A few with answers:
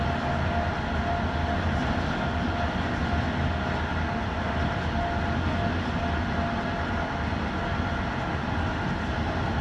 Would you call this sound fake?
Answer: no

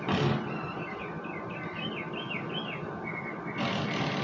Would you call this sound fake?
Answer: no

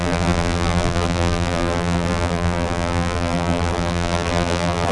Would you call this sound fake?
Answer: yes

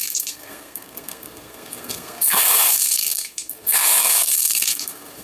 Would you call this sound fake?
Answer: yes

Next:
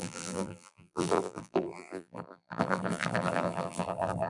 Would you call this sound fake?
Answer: yes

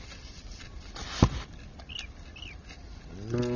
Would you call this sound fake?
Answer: no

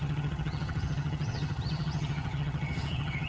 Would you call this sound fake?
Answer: yes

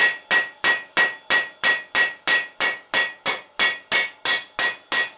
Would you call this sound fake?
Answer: no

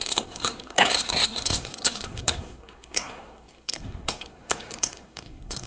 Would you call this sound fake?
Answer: yes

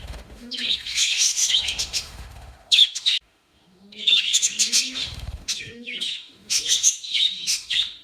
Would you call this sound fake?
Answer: yes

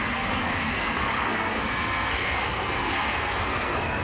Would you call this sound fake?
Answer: yes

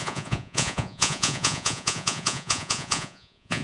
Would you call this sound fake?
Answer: yes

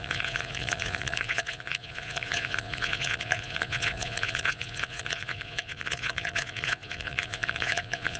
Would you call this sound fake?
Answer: yes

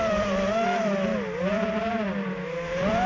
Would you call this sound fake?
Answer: yes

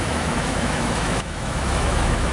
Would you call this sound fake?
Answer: yes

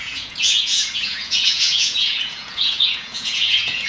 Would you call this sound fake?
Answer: yes